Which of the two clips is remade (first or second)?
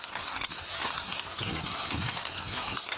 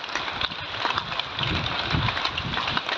first